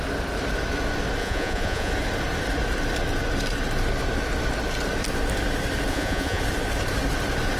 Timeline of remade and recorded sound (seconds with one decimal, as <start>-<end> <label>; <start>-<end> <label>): 0.0-1.2 recorded; 1.2-1.9 remade; 1.9-5.9 recorded; 5.9-6.4 remade; 6.4-7.6 recorded